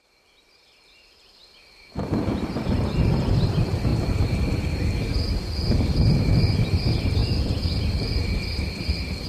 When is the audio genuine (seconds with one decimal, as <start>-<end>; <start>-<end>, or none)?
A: 0.0-9.3